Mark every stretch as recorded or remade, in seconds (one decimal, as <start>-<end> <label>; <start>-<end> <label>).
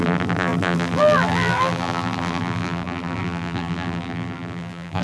0.0-5.0 remade